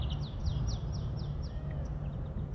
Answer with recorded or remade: recorded